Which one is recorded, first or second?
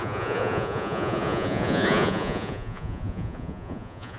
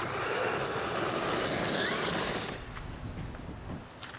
second